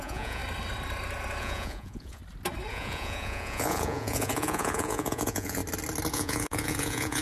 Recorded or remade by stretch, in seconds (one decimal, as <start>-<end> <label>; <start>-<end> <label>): 0.0-0.4 remade; 0.4-1.4 recorded; 1.4-2.2 remade; 2.2-2.7 recorded; 2.7-5.6 remade; 5.6-6.1 recorded; 6.1-7.2 remade